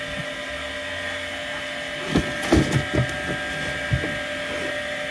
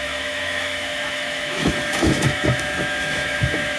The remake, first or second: second